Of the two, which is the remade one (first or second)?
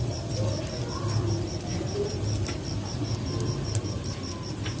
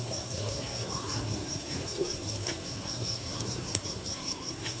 second